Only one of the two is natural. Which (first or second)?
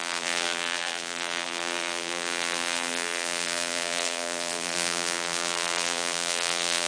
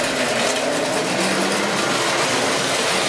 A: second